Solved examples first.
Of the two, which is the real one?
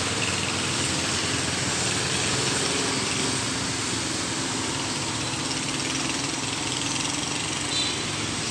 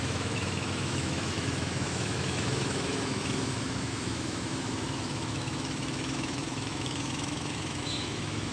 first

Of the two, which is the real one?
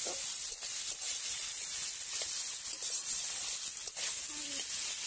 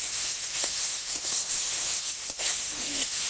first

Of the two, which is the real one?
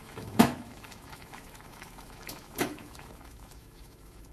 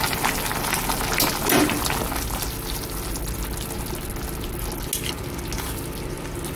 second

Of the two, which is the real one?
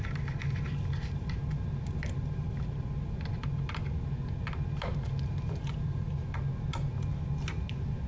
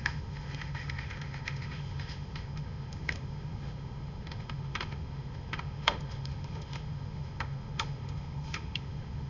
first